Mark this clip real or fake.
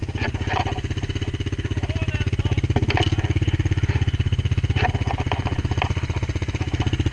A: real